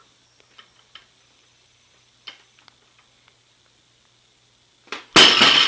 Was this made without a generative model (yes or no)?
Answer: yes